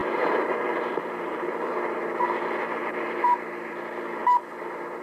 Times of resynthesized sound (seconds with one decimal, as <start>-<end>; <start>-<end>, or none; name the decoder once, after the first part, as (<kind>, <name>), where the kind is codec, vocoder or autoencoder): 0.0-2.0 (vocoder, BigVGAN v2); 2.8-3.7